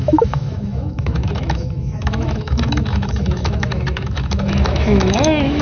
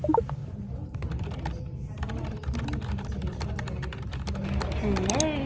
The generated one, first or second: first